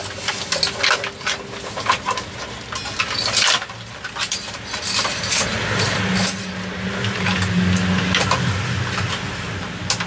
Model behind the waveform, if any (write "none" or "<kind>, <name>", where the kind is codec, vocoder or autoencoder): none